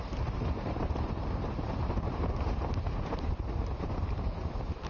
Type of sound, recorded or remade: remade